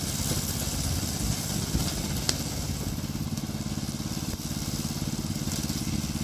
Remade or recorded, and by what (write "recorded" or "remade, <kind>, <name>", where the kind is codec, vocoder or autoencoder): recorded